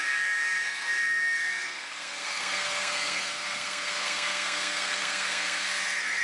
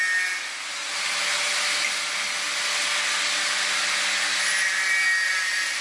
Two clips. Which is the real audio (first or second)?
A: second